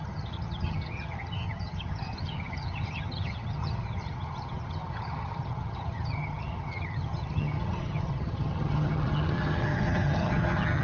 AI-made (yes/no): yes